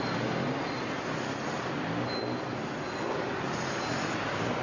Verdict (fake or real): real